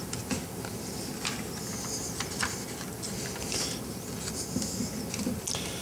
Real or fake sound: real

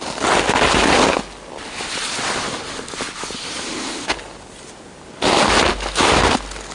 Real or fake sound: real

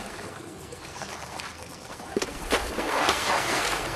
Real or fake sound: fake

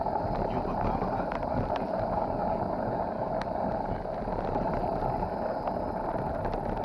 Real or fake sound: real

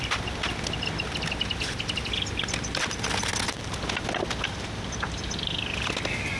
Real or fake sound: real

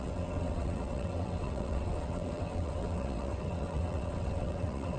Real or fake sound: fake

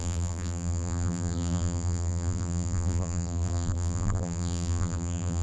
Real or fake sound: fake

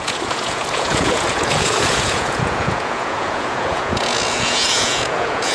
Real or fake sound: fake